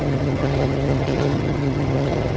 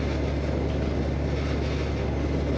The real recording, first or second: second